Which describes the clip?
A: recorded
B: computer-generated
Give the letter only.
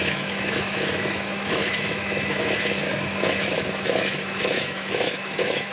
B